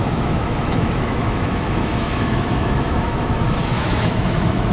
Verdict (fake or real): fake